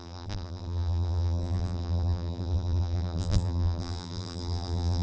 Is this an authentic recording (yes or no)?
no